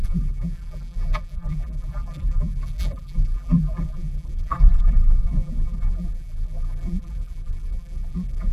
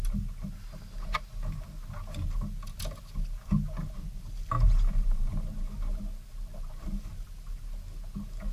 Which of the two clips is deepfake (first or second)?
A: first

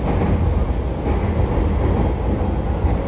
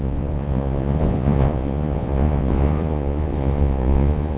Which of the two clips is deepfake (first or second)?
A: second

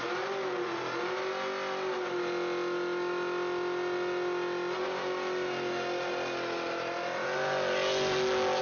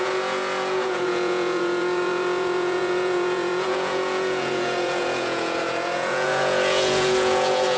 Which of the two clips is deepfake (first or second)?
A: second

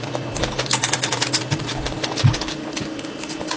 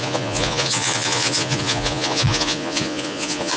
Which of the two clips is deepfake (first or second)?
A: second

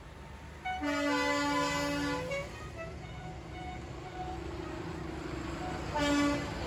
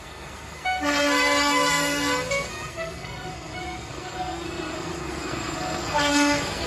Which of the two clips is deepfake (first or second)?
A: second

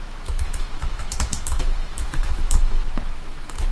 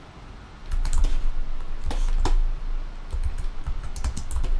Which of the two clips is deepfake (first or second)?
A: first